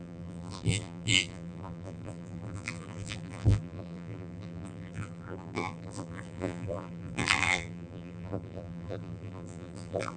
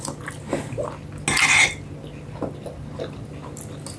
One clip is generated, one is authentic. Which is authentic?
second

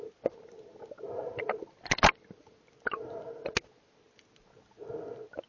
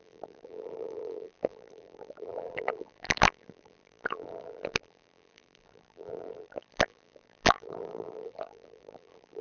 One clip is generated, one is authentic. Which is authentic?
first